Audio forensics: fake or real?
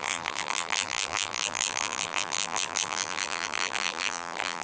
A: fake